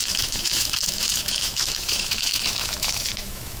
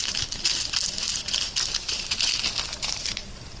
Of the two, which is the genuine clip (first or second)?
second